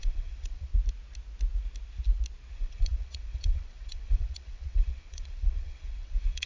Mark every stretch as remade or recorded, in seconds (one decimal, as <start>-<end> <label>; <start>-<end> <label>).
0.0-0.7 remade; 0.7-2.5 recorded; 2.5-6.5 remade